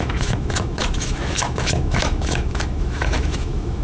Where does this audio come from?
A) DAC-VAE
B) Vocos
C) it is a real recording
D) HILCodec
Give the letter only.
A